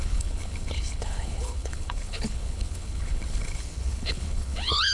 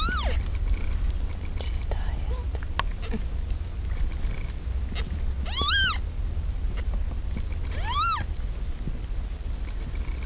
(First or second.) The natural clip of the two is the second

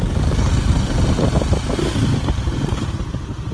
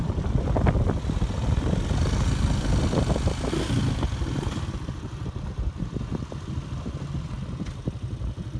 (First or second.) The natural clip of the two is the second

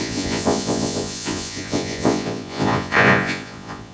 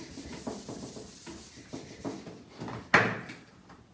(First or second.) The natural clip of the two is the second